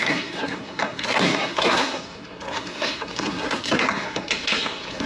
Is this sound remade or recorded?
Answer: remade